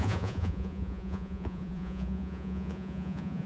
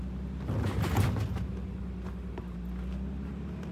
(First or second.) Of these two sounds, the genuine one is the second